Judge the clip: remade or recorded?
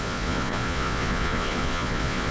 remade